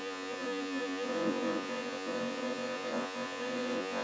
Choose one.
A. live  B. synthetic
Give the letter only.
B